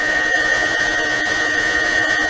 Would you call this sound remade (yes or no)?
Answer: yes